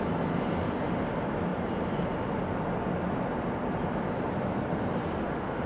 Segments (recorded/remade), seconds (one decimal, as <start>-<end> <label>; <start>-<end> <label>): 0.0-5.0 recorded; 5.0-5.7 remade